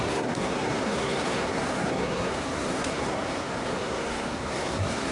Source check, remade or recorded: remade